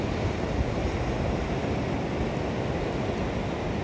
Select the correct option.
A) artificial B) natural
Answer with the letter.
B